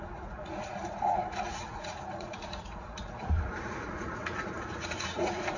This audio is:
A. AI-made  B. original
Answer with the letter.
A